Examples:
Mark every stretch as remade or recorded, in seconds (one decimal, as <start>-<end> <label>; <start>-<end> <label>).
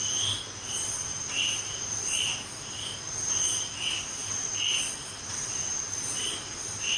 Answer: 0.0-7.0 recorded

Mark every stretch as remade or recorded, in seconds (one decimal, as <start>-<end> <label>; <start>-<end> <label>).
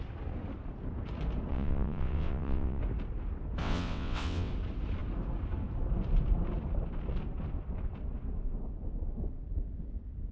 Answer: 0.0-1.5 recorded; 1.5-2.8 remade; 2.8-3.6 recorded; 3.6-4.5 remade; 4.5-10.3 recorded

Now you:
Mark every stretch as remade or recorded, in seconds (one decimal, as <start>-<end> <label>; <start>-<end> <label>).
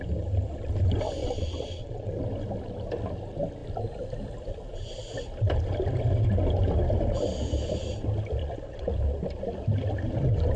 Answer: 0.0-1.2 recorded; 1.2-2.1 remade; 2.1-8.4 recorded; 8.4-8.9 remade; 8.9-10.6 recorded